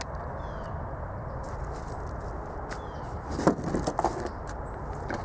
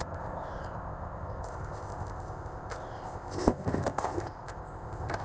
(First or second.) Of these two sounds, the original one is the first